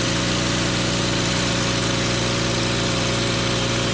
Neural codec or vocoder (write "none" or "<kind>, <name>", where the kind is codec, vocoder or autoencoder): none